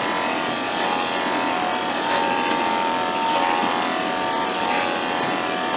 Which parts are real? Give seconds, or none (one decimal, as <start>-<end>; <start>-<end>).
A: 0.0-5.8